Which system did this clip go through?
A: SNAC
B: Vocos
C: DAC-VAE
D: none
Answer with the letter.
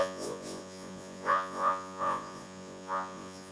B